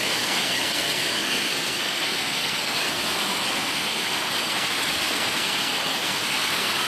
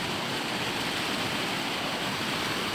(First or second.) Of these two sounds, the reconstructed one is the first